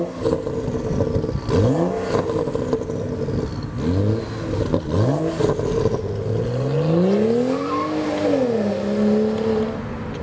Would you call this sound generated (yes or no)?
no